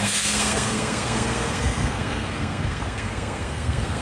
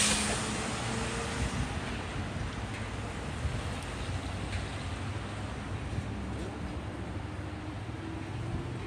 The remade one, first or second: first